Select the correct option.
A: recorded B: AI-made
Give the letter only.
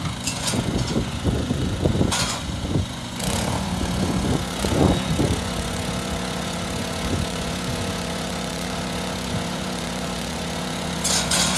B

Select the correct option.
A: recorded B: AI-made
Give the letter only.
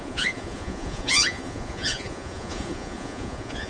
B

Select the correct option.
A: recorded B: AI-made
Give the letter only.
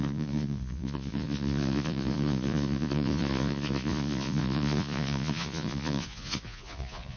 B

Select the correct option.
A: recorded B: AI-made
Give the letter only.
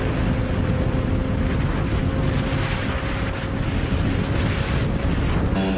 A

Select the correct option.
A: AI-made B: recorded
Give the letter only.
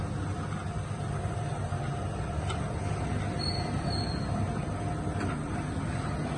B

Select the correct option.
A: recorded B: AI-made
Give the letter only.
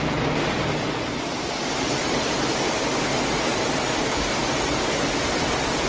A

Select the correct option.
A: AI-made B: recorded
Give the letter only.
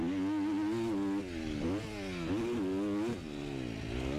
B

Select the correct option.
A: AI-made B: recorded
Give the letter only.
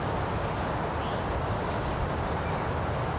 B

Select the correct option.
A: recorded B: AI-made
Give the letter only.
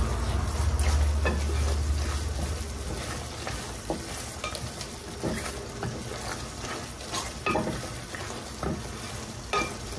A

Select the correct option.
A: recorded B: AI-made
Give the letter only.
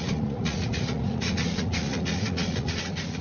B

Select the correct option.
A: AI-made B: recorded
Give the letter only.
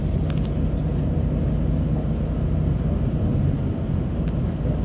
B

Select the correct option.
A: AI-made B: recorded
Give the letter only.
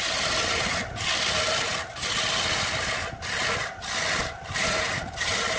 B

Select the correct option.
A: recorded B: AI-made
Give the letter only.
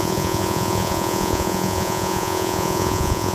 B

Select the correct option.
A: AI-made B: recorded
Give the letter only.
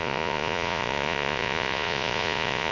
A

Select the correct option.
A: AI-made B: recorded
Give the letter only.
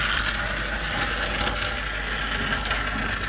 B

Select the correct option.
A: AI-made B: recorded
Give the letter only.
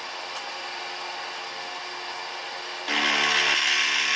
B